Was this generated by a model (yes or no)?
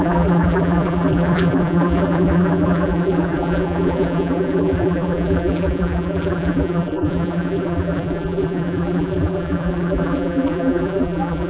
yes